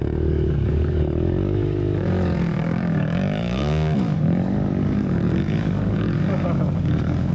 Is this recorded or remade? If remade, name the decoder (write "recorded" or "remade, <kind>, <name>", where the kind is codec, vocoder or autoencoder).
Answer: remade, codec, DAC